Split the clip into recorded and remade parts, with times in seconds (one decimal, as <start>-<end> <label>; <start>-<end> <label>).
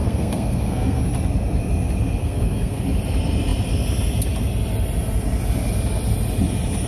0.0-1.0 remade; 1.0-2.2 recorded; 2.2-2.8 remade; 2.8-6.9 recorded